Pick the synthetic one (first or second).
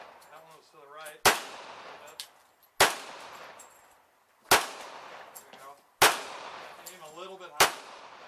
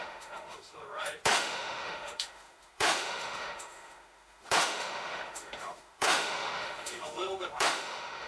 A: second